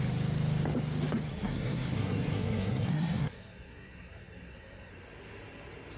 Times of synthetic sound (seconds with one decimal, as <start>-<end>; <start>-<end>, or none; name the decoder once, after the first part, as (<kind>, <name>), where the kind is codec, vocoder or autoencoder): 1.3-4.9 (codec, SNAC)